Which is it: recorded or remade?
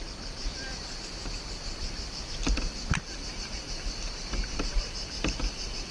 remade